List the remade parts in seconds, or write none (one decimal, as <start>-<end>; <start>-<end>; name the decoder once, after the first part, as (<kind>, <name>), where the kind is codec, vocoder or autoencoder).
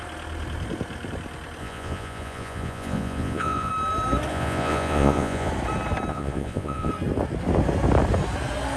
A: 1.6-3.7 (vocoder, Vocos); 4.3-5.5; 6.1-6.9